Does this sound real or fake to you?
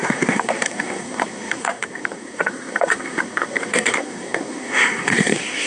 fake